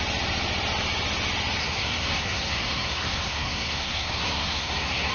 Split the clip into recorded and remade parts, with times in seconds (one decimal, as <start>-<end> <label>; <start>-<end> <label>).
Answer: 0.0-1.6 recorded; 1.6-5.1 remade